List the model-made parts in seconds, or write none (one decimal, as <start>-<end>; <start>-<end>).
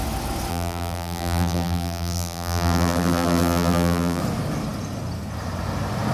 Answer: 0.5-4.2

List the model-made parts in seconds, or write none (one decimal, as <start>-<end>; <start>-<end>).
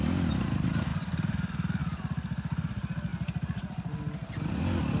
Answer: none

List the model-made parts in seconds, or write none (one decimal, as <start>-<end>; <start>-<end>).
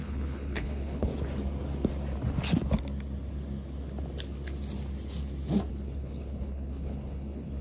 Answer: 0.0-1.1; 5.7-7.6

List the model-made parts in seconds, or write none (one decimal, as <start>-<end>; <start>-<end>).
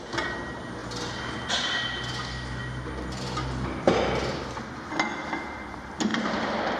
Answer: none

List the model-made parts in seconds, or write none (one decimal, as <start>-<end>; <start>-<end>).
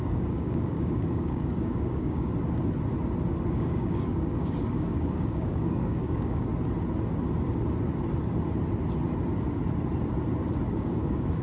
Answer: 0.0-2.3; 3.5-6.5; 10.7-11.4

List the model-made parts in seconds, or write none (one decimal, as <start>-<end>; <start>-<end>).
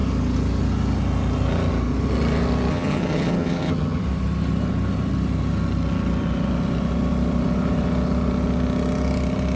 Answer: 2.7-4.0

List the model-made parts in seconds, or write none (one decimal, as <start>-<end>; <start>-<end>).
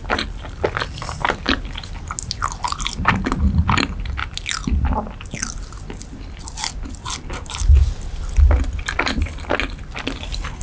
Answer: none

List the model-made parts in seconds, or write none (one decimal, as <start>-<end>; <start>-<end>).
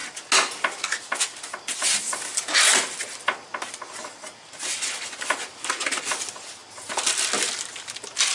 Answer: none